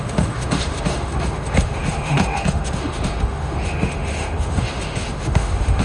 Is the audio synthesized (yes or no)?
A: yes